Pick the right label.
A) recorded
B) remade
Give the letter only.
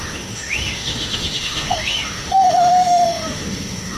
B